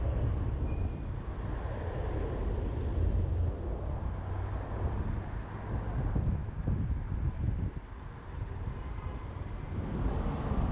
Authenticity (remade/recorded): recorded